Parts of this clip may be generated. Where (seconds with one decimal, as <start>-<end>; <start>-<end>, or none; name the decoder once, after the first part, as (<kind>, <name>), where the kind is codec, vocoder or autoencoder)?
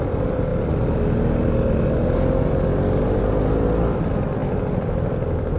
none